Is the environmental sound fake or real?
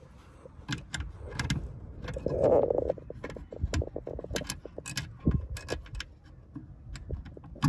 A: real